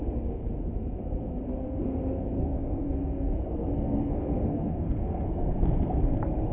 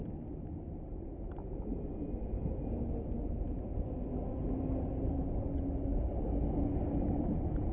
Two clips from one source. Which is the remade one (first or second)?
first